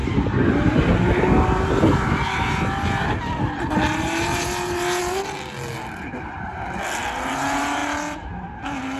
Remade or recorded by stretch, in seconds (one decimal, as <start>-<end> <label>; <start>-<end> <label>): 0.0-9.0 recorded